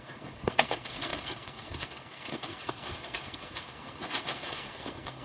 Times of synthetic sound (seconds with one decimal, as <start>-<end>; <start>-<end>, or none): 0.0-5.2